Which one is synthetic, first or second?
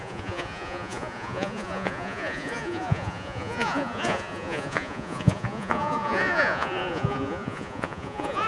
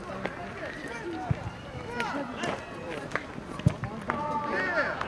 first